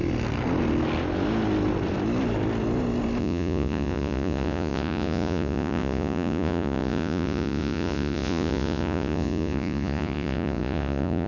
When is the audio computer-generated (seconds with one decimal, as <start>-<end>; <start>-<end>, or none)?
3.2-11.3